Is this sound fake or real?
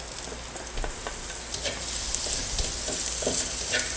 real